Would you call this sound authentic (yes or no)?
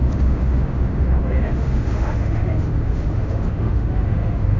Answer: no